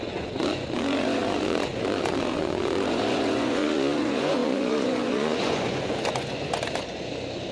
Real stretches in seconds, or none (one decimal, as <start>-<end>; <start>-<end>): none